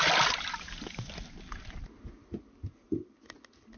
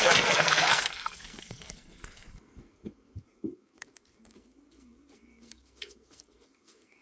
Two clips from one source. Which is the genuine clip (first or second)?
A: first